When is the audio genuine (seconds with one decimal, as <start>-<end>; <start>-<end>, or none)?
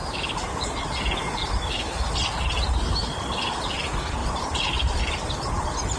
0.7-4.2; 5.3-6.0